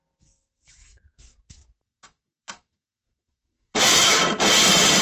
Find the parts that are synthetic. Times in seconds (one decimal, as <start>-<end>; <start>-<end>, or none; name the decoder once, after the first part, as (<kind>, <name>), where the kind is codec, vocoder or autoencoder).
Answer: 0.0-4.2 (autoencoder, DAC-VAE)